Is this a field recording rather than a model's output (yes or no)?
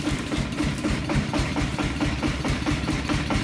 no